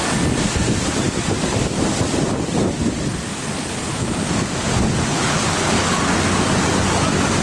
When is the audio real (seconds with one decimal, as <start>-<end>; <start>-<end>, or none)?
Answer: 0.0-3.6; 4.2-5.1; 6.0-7.4